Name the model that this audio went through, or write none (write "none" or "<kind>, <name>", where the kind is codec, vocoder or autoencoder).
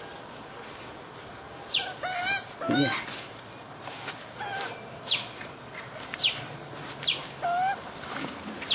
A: none